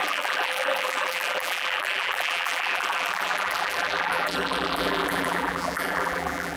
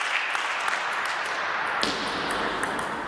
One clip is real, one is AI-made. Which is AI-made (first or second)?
first